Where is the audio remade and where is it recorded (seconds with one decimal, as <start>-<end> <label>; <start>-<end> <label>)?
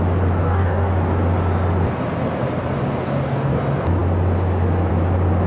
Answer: 0.0-0.4 recorded; 0.4-0.9 remade; 0.9-3.0 recorded; 3.0-3.6 remade; 3.6-5.5 recorded